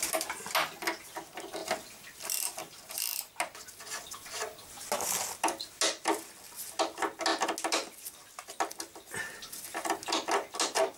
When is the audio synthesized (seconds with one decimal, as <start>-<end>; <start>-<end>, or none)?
none